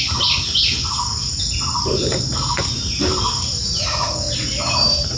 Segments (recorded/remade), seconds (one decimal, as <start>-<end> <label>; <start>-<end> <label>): 0.0-1.2 recorded; 1.2-4.3 remade; 4.3-5.2 recorded